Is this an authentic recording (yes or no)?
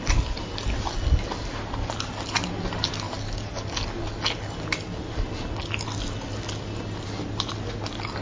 yes